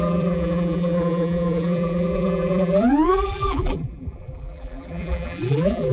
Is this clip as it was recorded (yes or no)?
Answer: no